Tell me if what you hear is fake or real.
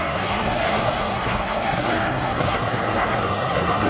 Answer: fake